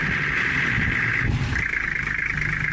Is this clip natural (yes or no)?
yes